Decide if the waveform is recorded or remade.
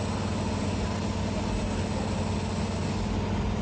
recorded